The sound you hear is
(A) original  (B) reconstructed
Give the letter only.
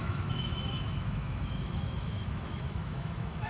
B